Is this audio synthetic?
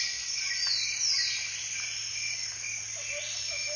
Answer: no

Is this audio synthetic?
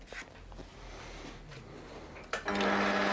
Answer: no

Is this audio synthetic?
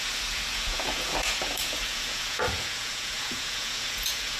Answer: yes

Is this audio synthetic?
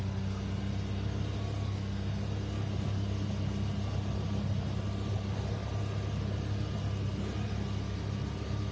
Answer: no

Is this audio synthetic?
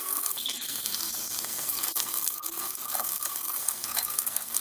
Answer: yes